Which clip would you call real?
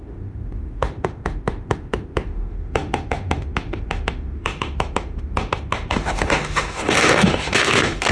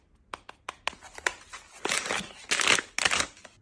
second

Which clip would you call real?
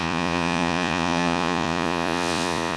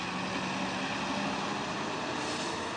second